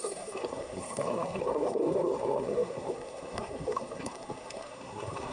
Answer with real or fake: fake